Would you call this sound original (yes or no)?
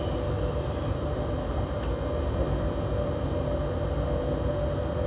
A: yes